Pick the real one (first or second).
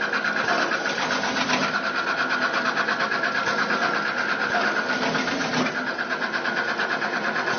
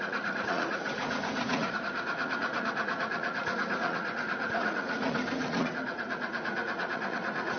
first